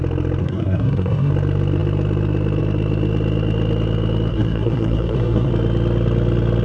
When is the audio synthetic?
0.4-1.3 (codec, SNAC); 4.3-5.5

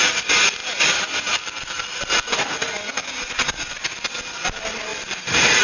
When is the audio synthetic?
0.6-2.7 (vocoder, BigVGAN v2); 4.9-5.6

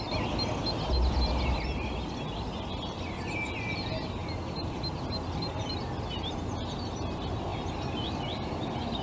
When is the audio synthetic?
none

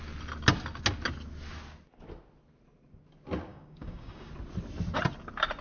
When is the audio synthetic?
3.5-4.3 (codec, DAC)

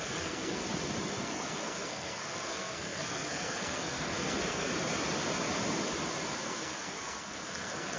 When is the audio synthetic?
0.0-0.6 (codec, SNAC); 1.2-4.7; 6.3-8.0